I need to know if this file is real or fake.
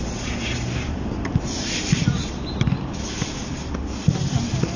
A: real